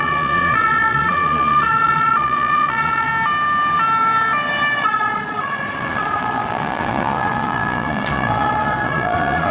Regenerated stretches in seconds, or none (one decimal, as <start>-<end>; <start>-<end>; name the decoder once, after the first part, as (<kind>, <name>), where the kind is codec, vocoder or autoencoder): 0.0-3.1 (vocoder, Vocos); 4.8-9.5